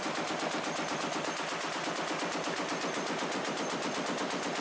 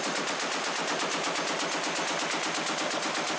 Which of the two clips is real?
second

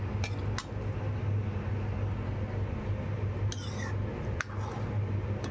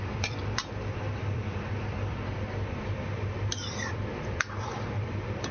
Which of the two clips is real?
first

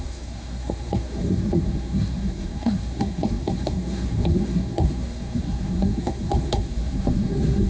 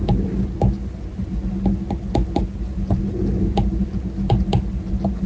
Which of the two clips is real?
second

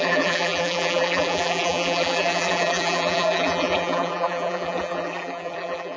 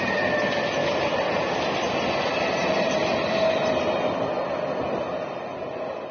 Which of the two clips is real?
second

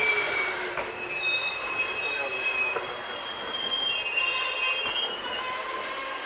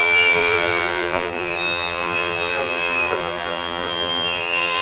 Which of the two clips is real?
first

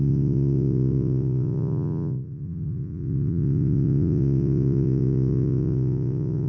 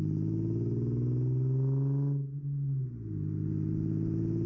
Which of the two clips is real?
second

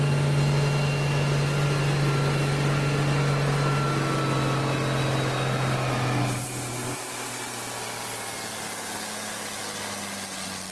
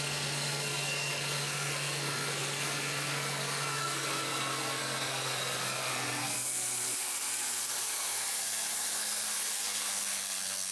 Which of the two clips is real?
first